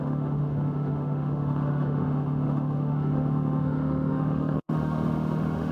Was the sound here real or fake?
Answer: fake